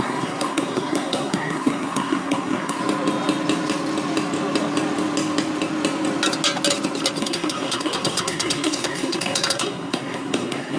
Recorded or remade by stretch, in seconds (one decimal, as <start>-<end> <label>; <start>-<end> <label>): 0.0-2.8 remade; 2.8-7.2 recorded; 7.2-10.8 remade